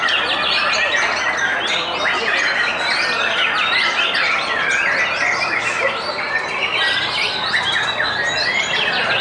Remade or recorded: recorded